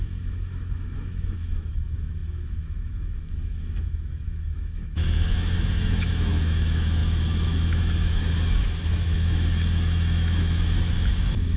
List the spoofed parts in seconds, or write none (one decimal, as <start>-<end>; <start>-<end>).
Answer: 0.0-11.6